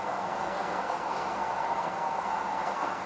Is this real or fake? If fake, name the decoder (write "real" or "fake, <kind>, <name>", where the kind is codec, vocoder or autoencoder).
fake, codec, SNAC